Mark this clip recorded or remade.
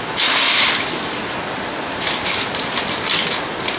remade